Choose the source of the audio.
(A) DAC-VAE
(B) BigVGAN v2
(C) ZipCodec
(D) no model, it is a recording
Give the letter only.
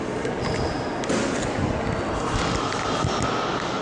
D